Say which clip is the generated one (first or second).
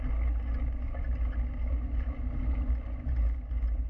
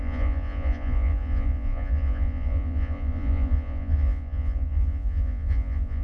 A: second